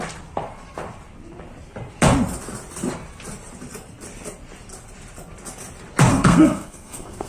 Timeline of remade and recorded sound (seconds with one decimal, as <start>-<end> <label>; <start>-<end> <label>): 0.0-6.1 recorded; 6.1-7.3 remade